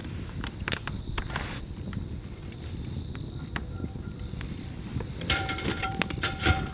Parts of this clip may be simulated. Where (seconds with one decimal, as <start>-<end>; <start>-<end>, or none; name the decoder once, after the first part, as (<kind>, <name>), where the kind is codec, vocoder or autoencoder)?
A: 0.0-6.7 (vocoder, BigVGAN v2)